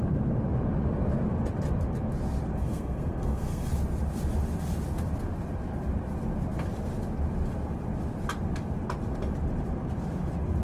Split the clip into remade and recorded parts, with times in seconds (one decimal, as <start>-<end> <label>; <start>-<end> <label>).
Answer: 0.0-2.6 recorded; 2.6-3.7 remade; 3.7-10.6 recorded